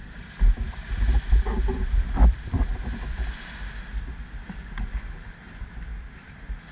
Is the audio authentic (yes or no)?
yes